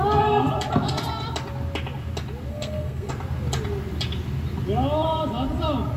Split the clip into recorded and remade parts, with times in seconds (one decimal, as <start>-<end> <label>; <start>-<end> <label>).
0.0-2.5 recorded; 2.5-3.1 remade; 3.1-6.0 recorded